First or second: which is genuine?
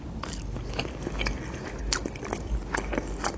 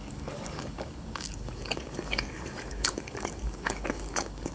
first